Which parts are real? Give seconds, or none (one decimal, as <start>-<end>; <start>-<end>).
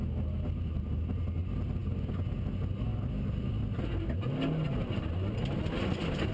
0.0-6.3